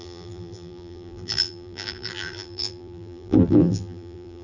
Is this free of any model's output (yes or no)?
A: no